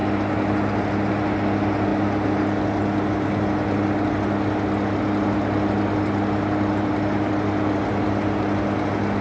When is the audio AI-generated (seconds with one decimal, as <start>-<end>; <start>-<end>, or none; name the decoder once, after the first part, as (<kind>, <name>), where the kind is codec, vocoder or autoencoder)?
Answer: none